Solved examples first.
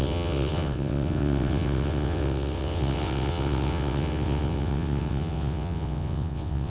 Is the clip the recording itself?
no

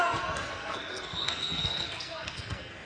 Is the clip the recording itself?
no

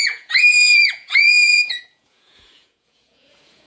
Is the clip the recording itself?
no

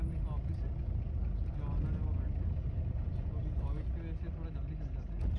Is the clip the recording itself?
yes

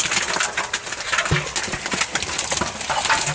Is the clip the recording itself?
yes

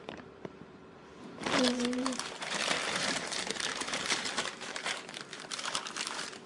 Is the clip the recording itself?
no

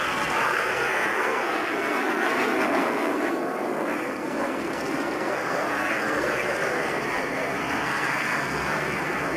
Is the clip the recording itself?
no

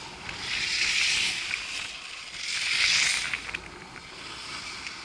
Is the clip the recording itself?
yes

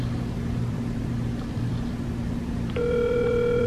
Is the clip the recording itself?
no